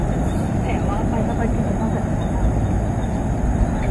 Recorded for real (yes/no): yes